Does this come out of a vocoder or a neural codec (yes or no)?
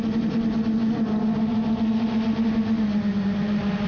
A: no